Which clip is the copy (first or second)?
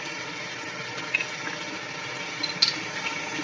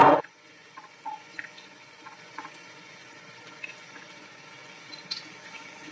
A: second